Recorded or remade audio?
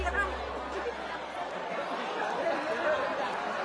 recorded